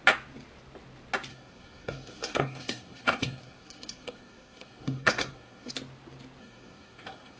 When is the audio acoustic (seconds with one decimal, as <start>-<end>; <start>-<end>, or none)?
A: 0.0-1.3; 5.7-6.4